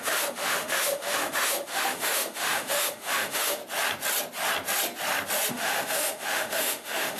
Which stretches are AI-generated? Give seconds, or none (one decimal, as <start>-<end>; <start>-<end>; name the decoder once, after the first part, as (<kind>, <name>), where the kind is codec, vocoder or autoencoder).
0.0-3.6 (autoencoder, DAC-VAE); 5.5-7.2